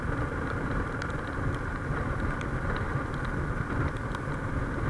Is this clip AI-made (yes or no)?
no